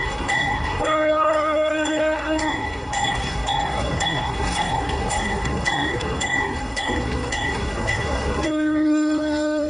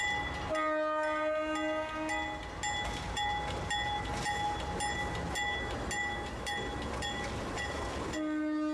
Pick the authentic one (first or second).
second